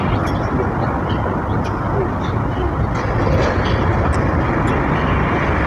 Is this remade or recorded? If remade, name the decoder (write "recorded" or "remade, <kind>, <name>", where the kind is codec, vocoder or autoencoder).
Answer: recorded